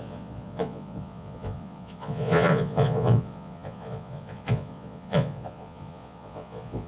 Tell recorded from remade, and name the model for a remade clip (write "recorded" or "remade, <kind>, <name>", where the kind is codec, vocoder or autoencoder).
remade, vocoder, Vocos